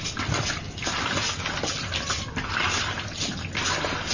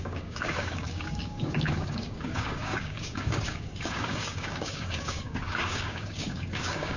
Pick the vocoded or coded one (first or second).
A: second